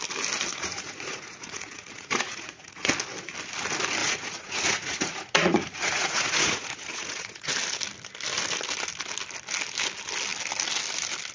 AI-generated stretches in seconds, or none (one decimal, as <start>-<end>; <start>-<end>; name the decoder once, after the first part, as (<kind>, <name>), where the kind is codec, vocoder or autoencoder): 0.5-2.9 (vocoder, Vocos); 4.0-7.5